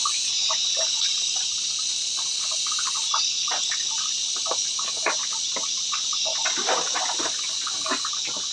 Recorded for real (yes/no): yes